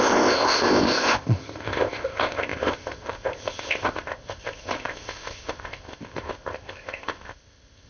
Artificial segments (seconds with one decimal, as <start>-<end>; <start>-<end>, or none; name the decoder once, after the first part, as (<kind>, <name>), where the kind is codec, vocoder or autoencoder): 0.0-7.9 (codec, ZipCodec)